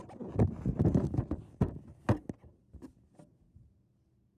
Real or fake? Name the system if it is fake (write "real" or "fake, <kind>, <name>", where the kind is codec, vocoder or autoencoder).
real